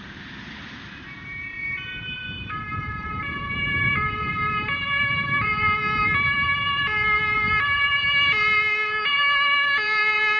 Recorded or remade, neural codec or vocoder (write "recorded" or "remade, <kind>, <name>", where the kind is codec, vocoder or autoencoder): remade, vocoder, BigVGAN v2